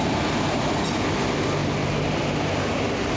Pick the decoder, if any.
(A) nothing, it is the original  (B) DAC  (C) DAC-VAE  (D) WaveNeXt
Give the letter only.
A